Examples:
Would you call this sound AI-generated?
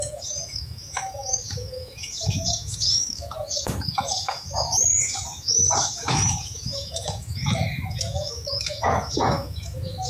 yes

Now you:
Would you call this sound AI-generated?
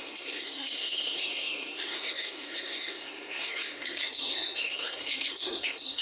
yes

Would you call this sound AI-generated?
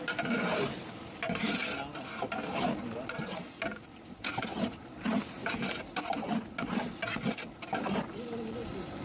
no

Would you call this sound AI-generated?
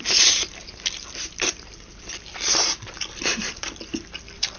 yes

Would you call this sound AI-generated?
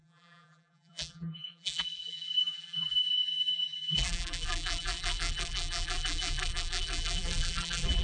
yes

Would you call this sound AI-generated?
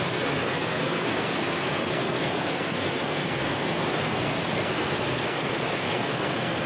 yes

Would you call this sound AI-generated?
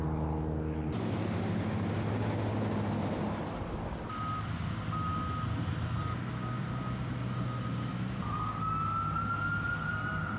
no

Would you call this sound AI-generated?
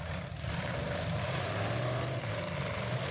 yes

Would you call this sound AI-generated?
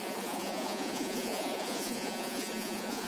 yes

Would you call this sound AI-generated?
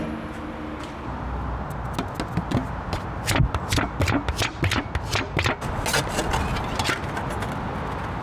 no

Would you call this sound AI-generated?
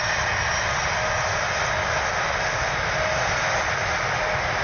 no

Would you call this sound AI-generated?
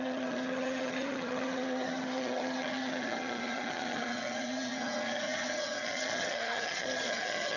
yes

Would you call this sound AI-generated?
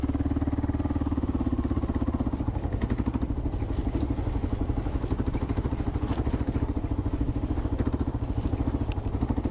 no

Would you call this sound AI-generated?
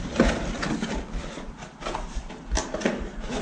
no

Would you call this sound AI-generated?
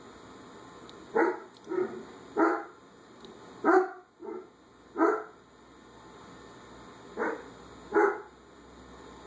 no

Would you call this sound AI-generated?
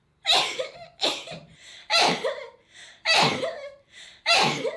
yes